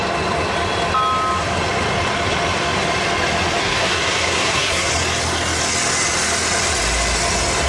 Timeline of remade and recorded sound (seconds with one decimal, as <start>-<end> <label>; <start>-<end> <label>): 0.0-3.6 recorded; 3.6-4.9 remade; 4.9-7.7 recorded